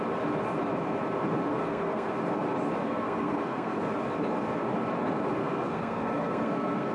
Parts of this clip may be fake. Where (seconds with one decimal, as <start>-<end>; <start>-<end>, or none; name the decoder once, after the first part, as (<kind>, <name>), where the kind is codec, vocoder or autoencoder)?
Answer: 1.5-2.1 (codec, SNAC); 2.8-3.9; 5.4-6.9